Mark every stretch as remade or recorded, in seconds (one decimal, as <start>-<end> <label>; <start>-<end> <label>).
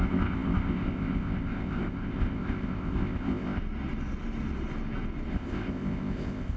0.0-3.6 remade; 3.6-5.3 recorded; 5.3-6.6 remade